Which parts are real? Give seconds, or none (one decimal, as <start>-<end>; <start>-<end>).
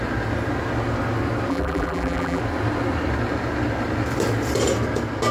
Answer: 0.0-1.5; 2.4-5.3